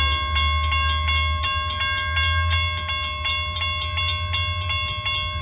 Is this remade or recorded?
recorded